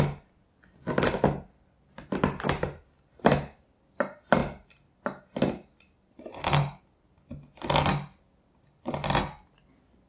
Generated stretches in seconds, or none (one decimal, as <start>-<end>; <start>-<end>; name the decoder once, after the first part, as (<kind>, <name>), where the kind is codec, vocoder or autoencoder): none